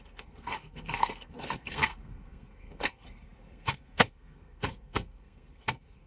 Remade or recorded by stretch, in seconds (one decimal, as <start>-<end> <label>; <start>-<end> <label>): 0.0-6.1 remade